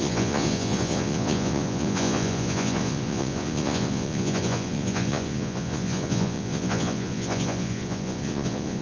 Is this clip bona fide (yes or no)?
no